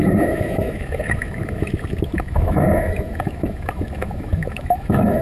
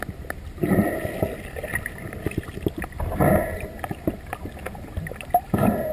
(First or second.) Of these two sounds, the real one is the second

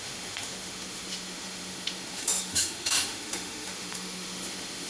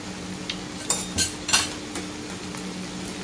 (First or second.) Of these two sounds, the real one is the second